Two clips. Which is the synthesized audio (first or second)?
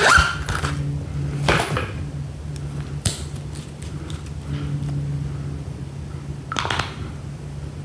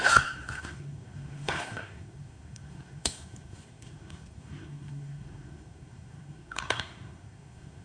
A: second